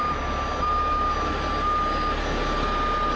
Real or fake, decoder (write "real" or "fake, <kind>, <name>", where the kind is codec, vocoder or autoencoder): real